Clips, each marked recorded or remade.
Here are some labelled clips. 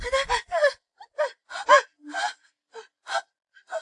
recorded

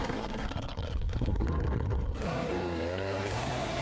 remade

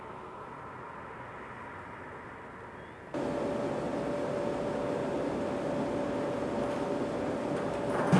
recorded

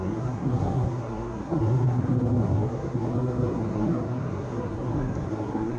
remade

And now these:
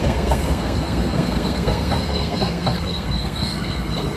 remade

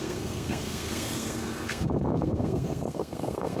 remade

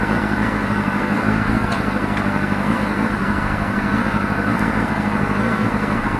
remade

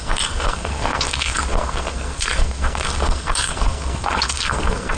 remade